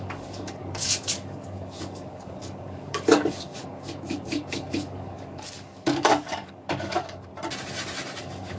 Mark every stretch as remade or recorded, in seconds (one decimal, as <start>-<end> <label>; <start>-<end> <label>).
0.0-7.3 remade; 7.3-8.2 recorded; 8.2-8.6 remade